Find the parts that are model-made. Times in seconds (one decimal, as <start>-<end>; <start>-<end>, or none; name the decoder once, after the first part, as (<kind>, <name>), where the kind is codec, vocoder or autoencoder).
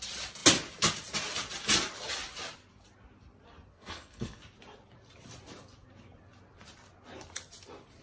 3.7-4.4 (codec, SNAC)